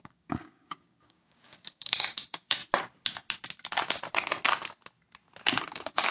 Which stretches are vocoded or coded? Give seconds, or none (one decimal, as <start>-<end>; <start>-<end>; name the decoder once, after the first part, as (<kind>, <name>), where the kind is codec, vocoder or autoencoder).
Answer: 0.0-2.6 (codec, DAC); 5.6-6.1